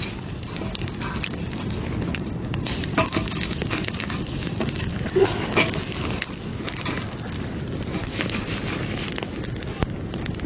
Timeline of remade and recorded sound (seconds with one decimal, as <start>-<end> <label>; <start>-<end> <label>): 0.0-2.9 recorded; 2.9-5.7 remade; 5.7-8.0 recorded; 8.0-8.5 remade; 8.5-10.5 recorded